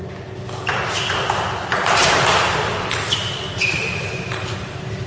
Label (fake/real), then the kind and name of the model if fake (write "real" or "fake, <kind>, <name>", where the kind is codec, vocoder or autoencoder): real